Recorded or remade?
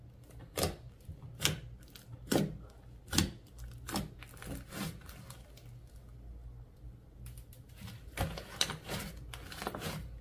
recorded